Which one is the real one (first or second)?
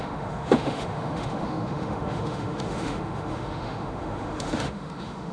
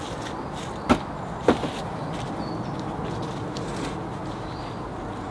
second